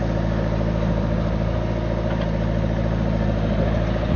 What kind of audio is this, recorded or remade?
recorded